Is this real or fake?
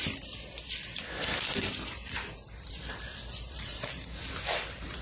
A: fake